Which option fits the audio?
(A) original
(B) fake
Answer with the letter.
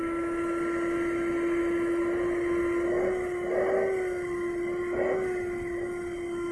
A